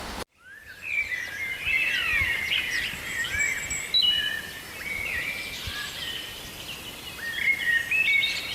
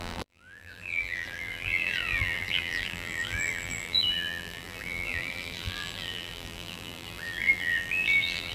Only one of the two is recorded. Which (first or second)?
first